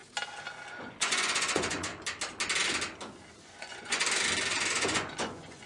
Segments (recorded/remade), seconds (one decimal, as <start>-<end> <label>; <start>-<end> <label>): 0.0-0.7 recorded; 0.7-1.9 remade; 1.9-3.4 recorded; 3.4-4.0 remade; 4.0-4.7 recorded; 4.7-5.7 remade